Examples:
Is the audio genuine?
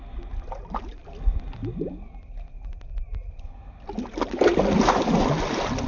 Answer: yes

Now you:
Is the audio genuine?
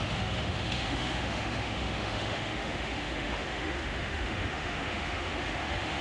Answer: no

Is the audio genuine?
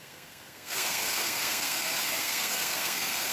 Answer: no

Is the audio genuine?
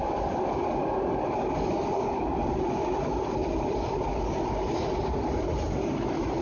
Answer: no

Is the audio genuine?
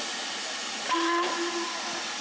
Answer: yes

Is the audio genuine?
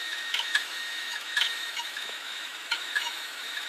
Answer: no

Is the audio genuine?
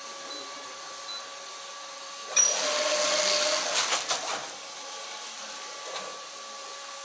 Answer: yes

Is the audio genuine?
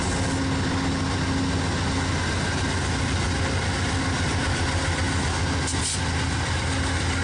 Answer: yes